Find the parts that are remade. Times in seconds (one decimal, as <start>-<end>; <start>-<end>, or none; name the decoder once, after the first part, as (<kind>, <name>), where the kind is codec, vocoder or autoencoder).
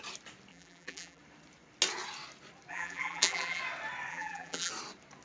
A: 0.5-1.2 (vocoder, BigVGAN v2); 2.7-3.6; 4.1-4.7